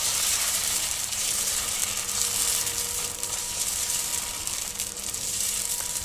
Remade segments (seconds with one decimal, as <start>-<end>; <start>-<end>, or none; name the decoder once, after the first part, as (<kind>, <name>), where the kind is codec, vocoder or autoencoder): 0.0-1.8 (vocoder, BigVGAN v2); 2.6-4.1; 4.9-6.0